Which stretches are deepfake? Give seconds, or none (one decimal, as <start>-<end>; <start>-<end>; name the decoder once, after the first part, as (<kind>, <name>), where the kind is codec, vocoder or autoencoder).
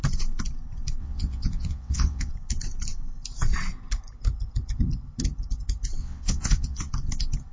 1.0-2.3 (vocoder, WaveNeXt); 6.0-6.9